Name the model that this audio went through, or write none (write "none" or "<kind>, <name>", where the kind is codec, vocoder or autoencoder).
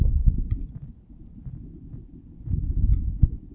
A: none